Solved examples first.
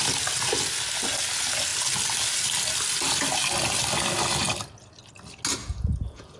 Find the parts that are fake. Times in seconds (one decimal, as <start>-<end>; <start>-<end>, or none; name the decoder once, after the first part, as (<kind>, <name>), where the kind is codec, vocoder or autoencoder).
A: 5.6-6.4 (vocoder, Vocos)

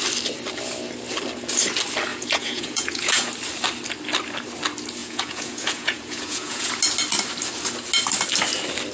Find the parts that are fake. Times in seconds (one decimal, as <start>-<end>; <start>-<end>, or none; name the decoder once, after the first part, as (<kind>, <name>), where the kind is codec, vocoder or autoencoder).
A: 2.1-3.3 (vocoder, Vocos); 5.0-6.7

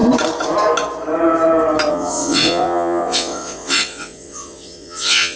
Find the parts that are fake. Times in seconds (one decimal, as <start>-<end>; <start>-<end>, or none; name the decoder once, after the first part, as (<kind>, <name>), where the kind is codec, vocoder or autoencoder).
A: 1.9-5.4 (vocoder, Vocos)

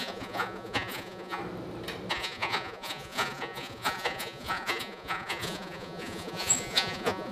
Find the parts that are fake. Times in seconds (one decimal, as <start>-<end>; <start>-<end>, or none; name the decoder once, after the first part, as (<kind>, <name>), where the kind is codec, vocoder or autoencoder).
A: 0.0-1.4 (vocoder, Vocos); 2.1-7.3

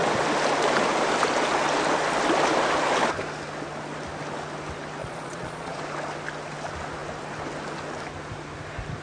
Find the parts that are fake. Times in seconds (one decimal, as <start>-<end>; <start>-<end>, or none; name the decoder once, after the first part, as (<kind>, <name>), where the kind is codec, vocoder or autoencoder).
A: 5.0-5.8 (vocoder, Vocos)

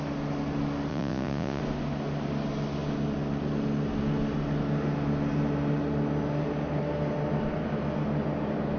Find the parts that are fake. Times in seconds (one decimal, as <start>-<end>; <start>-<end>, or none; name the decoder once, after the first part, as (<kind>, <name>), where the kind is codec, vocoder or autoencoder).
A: 0.9-1.6 (vocoder, Vocos)

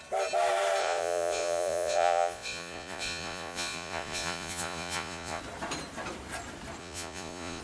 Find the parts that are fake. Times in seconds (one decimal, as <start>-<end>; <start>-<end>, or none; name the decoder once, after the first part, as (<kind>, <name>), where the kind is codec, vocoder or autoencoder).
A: 0.8-5.4 (vocoder, Vocos); 6.8-7.6